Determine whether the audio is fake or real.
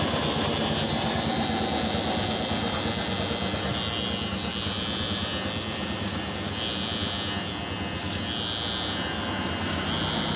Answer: real